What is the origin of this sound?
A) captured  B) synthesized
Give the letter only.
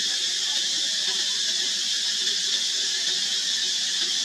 A